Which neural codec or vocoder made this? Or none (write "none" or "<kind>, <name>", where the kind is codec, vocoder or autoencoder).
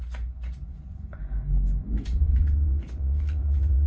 vocoder, Vocos